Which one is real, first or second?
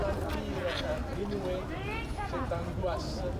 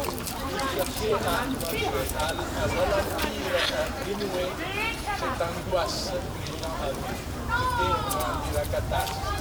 first